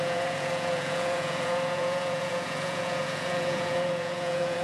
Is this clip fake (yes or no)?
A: yes